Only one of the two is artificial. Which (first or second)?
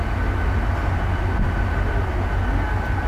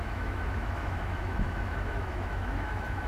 second